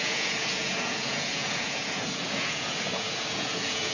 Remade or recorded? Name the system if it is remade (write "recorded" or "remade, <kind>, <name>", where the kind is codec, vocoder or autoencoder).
remade, vocoder, Vocos